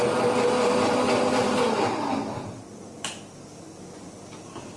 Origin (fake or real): real